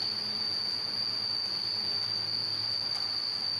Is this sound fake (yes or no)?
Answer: no